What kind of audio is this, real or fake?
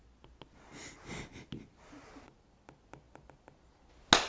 real